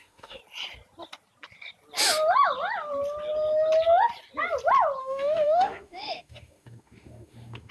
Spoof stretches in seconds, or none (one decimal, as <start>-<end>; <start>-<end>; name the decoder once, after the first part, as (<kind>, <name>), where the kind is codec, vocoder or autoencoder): 0.0-0.4 (autoencoder, DAC-VAE); 5.0-7.7